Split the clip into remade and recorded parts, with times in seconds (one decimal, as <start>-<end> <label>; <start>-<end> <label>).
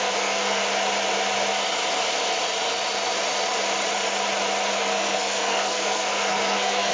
0.0-0.6 remade; 0.6-4.7 recorded; 4.7-6.9 remade